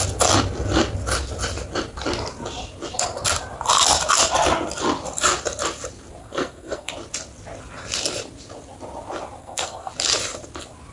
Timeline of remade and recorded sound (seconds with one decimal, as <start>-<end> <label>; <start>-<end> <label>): 0.0-6.2 recorded; 6.2-6.9 remade; 6.9-9.4 recorded; 9.4-9.9 remade; 9.9-10.9 recorded